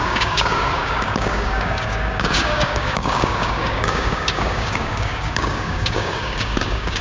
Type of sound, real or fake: fake